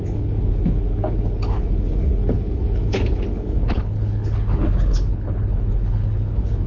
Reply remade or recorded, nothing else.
remade